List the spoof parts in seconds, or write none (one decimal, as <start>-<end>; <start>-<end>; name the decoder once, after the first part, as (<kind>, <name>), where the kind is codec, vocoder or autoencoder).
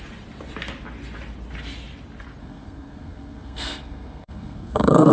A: 2.4-5.1 (codec, SNAC)